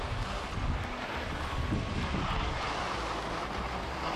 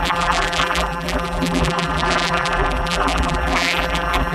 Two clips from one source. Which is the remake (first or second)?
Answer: second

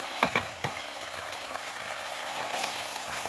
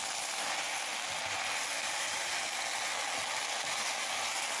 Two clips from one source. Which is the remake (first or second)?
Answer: first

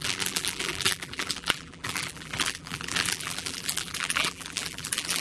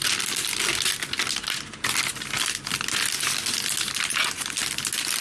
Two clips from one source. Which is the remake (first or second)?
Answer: first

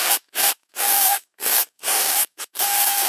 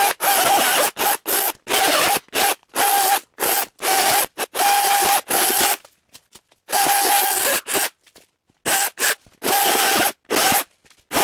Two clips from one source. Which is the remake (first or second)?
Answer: first